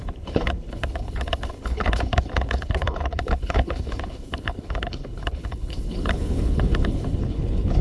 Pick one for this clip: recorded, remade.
remade